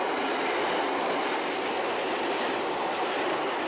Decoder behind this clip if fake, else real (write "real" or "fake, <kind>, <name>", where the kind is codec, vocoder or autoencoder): real